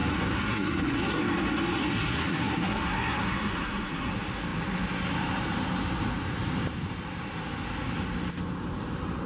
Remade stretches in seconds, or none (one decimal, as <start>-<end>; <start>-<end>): 0.0-1.2; 1.9-4.1

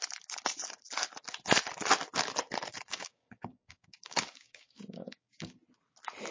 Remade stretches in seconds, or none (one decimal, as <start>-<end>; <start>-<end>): 2.7-5.6

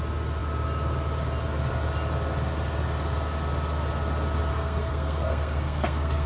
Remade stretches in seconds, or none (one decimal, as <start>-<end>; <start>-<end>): 4.5-6.3

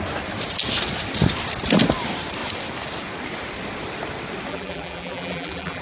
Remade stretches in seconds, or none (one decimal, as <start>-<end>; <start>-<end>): 4.5-5.8